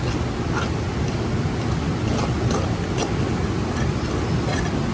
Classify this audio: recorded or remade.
recorded